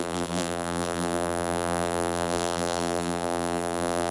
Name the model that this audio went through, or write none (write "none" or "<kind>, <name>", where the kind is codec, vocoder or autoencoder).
vocoder, BigVGAN v2